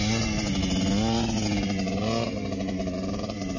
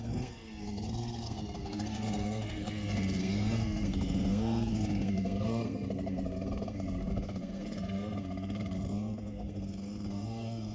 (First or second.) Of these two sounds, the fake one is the second